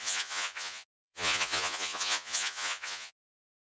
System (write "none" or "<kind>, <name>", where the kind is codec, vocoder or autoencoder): vocoder, Vocos